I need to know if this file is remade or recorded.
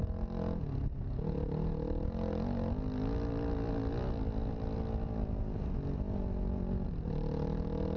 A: recorded